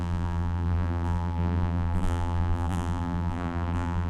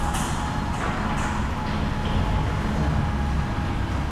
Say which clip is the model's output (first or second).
first